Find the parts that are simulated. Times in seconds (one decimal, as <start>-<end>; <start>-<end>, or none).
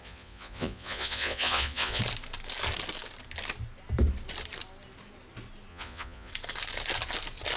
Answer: 0.0-2.0; 5.7-6.3